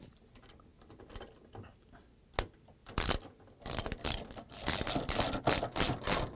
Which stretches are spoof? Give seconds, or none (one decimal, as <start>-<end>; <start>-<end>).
none